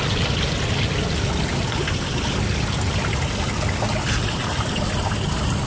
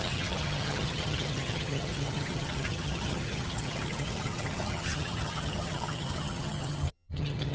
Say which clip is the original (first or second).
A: first